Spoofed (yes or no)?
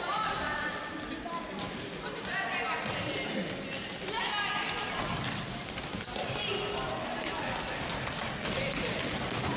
no